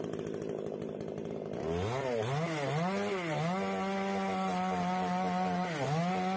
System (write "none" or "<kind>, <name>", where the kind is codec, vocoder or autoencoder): none